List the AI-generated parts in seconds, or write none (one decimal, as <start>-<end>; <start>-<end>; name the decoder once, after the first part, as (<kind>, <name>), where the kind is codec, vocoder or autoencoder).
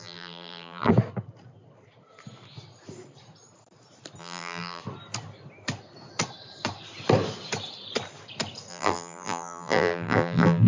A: 0.0-0.9 (vocoder, BigVGAN v2); 4.2-4.8; 8.7-10.7